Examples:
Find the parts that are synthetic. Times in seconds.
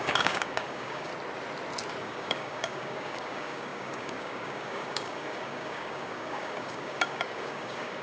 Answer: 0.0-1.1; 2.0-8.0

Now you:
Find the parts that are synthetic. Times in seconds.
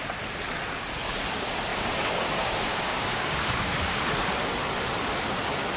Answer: 1.7-4.1